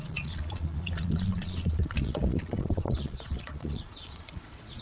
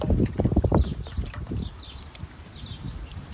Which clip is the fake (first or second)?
first